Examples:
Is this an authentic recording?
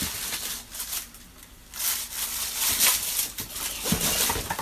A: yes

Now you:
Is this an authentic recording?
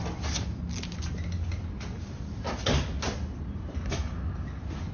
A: yes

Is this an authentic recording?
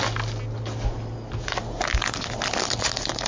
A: yes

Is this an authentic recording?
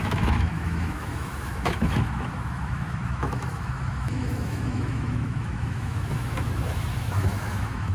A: no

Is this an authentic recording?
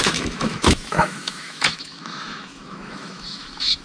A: no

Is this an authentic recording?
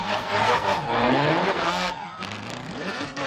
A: no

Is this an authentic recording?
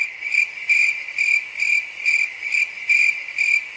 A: yes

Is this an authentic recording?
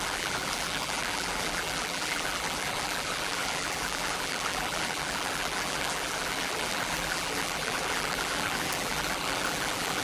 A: no